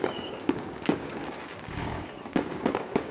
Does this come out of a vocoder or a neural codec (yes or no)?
yes